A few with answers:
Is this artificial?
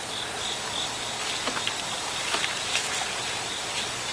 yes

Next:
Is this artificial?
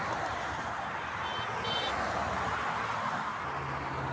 no